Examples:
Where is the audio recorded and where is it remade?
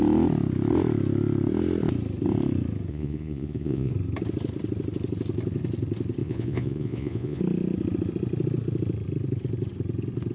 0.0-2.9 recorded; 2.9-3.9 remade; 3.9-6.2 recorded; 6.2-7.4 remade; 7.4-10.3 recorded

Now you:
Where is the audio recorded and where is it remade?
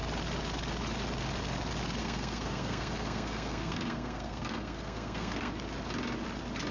0.0-2.0 recorded; 2.0-5.5 remade; 5.5-6.7 recorded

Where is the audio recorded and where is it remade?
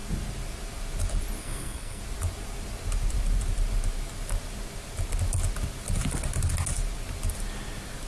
0.0-1.4 recorded; 1.4-2.0 remade; 2.0-8.1 recorded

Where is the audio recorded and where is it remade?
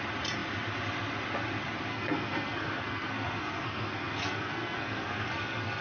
0.0-1.9 recorded; 1.9-5.8 remade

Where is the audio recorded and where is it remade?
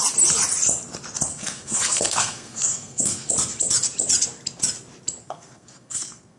0.0-1.3 recorded; 1.3-3.3 remade; 3.3-5.2 recorded; 5.2-6.4 remade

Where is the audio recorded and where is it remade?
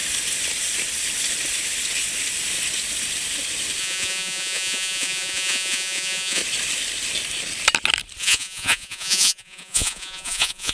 0.0-3.8 recorded; 3.8-6.4 remade; 6.4-8.2 recorded; 8.2-10.7 remade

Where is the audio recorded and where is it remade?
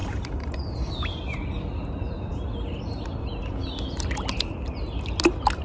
0.0-0.9 remade; 0.9-5.6 recorded